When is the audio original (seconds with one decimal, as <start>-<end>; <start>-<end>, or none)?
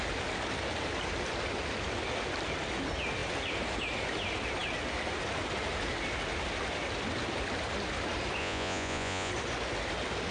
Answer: 0.0-8.4; 9.3-10.3